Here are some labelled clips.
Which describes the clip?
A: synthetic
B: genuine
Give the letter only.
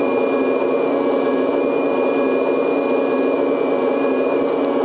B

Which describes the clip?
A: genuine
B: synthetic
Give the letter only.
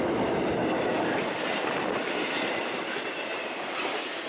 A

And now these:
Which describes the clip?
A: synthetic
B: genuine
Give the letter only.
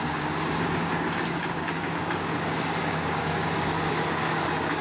A